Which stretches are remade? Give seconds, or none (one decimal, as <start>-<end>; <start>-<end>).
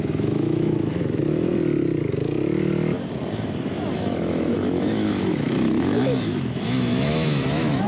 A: 0.0-1.5; 4.0-7.9